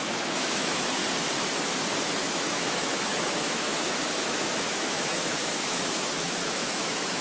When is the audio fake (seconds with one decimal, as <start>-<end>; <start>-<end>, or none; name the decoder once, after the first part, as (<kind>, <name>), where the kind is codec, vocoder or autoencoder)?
0.0-1.0 (autoencoder, DAC-VAE); 2.2-7.2